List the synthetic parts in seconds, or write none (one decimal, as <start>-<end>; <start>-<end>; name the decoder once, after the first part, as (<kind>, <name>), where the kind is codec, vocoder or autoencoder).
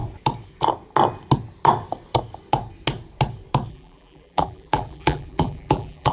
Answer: 3.7-6.1 (vocoder, BigVGAN v2)